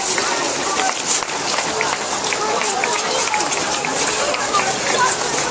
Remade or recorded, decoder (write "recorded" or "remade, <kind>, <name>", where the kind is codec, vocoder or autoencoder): recorded